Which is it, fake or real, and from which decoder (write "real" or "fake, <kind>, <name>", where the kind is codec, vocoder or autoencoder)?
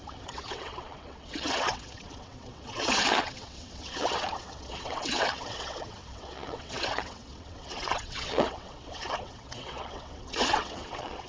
fake, vocoder, WaveNeXt